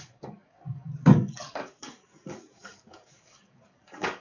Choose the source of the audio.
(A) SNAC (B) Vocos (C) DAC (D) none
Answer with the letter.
C